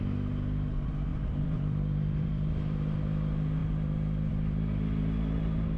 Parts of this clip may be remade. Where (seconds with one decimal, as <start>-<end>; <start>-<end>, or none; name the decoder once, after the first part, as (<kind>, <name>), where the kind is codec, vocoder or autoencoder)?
1.1-2.5 (vocoder, BigVGAN v2)

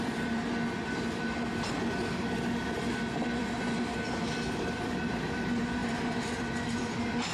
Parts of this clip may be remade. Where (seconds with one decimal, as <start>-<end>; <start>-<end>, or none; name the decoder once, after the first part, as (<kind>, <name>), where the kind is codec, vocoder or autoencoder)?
0.0-0.4 (vocoder, BigVGAN v2); 3.1-4.0; 4.6-5.8; 6.8-7.3